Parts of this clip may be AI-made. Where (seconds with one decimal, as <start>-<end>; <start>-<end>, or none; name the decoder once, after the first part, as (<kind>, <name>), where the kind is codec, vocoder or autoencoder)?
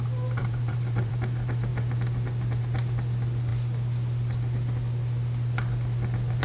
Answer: 0.4-1.1 (vocoder, BigVGAN v2)